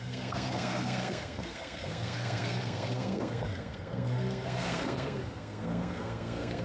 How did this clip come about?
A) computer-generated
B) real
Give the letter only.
A